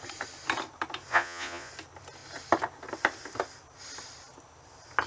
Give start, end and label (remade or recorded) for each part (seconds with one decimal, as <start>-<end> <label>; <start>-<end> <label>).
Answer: 0.0-1.1 recorded; 1.1-1.7 remade; 1.7-5.1 recorded